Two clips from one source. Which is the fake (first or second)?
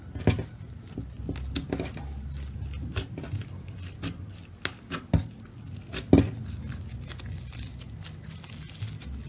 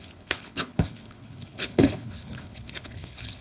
second